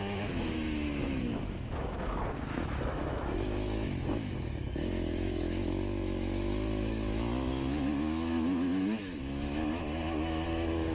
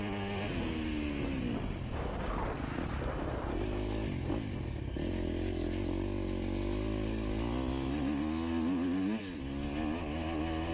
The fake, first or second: first